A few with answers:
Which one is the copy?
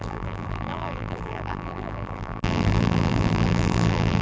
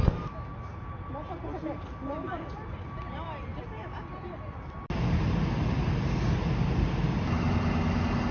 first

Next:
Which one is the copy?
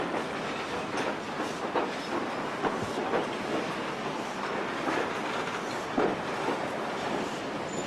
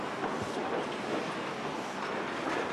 first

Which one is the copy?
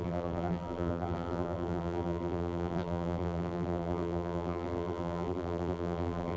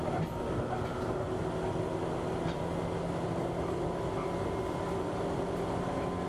first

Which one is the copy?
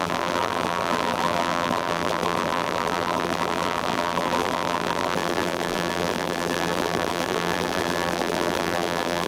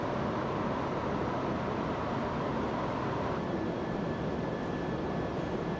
first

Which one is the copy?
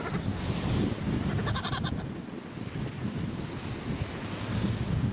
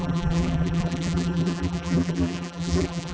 second